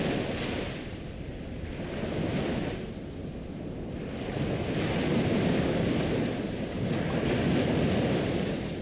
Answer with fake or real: real